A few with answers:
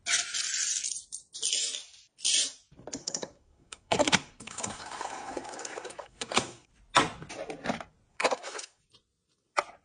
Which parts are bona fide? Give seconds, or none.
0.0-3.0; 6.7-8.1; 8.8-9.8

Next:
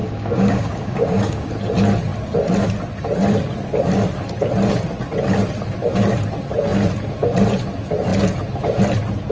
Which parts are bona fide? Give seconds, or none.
1.5-9.3

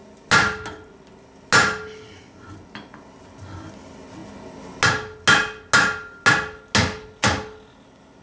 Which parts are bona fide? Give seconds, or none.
0.0-8.2

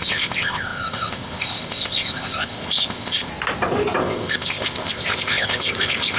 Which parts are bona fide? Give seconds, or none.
3.3-4.0